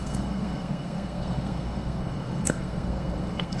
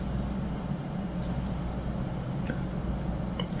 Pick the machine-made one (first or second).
first